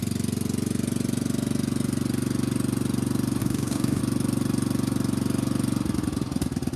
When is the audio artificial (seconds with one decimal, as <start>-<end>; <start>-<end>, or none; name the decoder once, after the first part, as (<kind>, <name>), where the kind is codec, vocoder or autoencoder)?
3.4-4.0 (codec, DAC)